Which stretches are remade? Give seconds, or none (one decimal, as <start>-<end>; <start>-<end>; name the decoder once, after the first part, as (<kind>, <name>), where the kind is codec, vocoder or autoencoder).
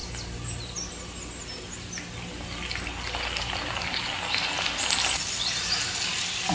none